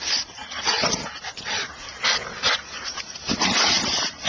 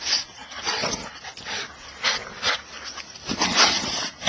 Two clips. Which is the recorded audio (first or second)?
second